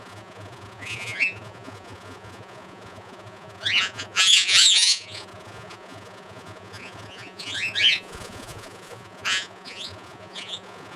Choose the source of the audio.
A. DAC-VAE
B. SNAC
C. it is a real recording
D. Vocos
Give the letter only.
D